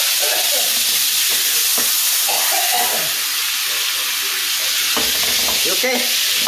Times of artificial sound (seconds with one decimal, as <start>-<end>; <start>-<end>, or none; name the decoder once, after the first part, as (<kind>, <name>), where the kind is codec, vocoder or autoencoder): none